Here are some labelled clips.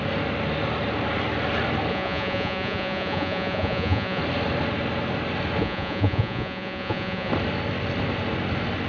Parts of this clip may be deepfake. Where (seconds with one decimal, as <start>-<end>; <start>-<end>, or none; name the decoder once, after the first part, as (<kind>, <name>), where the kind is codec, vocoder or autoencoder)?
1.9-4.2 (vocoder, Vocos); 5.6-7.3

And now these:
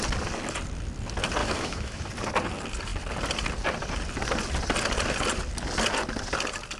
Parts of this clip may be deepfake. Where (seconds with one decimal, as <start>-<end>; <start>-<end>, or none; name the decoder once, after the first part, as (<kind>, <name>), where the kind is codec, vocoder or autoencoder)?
1.4-2.1 (autoencoder, DAC-VAE)

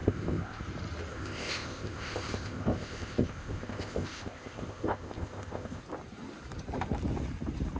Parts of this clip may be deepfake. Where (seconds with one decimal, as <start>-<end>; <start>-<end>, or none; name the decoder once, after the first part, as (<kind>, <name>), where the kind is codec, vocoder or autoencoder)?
0.0-0.6 (codec, ZipCodec); 1.1-5.8

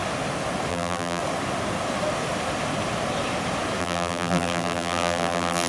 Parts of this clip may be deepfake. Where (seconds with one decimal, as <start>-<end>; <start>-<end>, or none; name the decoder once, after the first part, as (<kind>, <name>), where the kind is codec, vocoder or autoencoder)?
0.7-1.2 (vocoder, BigVGAN v2); 3.8-5.7

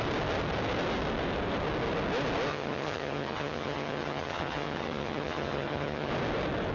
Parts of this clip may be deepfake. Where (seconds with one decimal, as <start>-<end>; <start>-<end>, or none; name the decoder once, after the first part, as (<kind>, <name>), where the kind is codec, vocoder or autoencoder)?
2.5-6.1 (vocoder, HiFi-GAN)

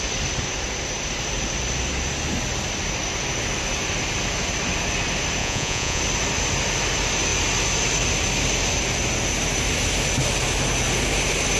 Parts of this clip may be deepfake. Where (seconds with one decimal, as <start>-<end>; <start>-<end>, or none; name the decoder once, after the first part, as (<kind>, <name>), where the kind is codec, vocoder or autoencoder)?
5.4-6.0 (vocoder, Vocos)

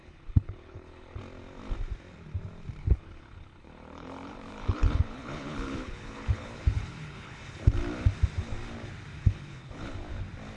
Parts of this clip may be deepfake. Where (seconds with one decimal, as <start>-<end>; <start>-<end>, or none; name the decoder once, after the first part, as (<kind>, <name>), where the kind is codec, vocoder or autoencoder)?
0.0-1.2 (codec, HILCodec); 2.8-7.7; 9.2-10.2